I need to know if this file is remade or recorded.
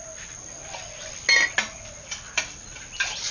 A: recorded